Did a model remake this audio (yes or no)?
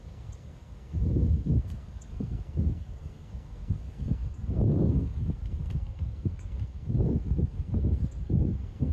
yes